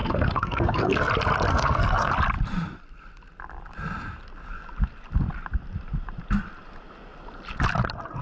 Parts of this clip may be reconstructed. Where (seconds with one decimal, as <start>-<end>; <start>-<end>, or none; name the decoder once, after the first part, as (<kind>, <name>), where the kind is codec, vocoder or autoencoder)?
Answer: 0.0-1.1 (codec, SNAC); 1.5-2.1